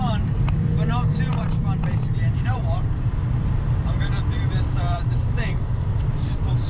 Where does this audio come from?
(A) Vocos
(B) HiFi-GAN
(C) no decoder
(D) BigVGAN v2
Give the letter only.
D